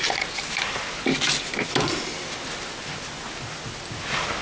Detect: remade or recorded recorded